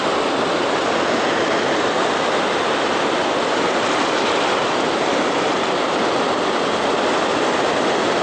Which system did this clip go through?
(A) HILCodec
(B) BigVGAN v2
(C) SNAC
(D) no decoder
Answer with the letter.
D